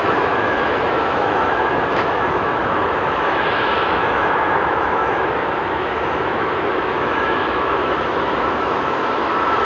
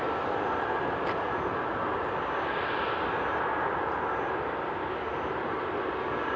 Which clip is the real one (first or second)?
second